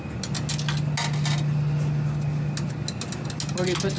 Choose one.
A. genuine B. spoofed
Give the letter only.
A